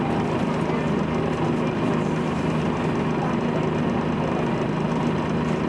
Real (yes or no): yes